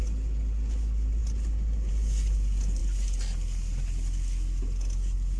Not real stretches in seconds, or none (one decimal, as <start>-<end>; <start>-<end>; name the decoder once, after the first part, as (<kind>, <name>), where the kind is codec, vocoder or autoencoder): none